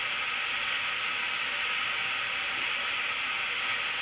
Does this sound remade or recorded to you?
recorded